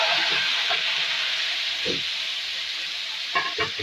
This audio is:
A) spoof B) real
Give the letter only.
A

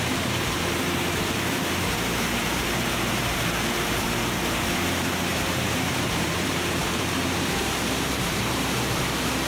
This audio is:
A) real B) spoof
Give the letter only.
B